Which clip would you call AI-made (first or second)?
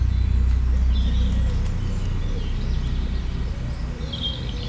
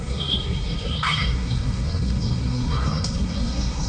second